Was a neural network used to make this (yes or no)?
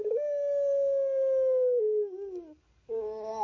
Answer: yes